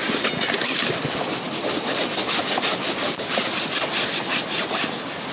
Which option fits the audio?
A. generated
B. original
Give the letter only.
B